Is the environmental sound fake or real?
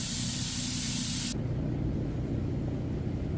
real